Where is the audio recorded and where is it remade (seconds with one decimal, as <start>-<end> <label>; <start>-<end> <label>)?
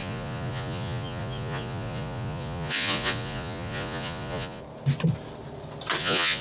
0.0-4.6 remade; 4.6-6.0 recorded; 6.0-6.4 remade